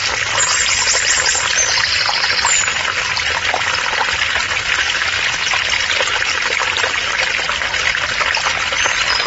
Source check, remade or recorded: recorded